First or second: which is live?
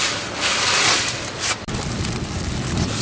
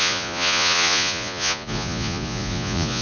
first